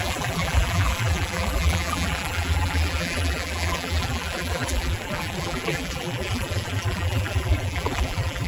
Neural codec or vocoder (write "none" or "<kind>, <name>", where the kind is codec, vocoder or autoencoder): vocoder, BigVGAN v2